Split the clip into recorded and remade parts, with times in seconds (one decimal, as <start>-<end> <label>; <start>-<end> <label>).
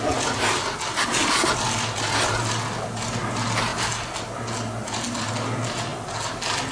0.0-6.7 recorded